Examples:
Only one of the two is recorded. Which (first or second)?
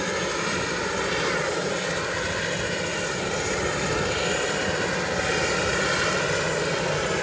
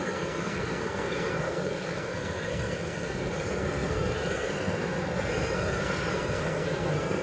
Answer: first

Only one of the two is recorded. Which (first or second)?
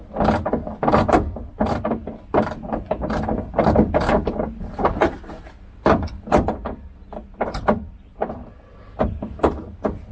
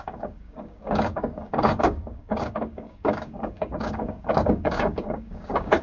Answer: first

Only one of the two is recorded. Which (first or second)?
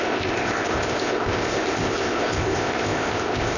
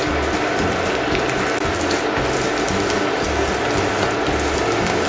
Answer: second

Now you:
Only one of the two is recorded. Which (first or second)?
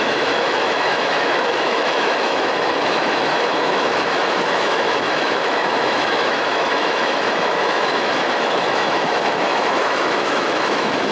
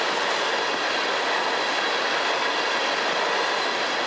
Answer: second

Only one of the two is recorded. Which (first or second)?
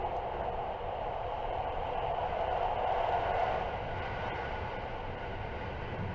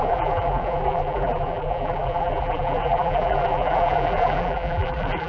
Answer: first